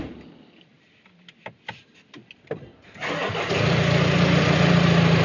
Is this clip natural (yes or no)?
yes